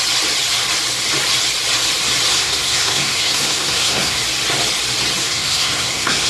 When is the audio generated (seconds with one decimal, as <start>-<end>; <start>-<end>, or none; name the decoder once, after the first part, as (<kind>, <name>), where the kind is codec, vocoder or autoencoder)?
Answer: 2.3-4.2 (codec, SNAC); 5.2-6.3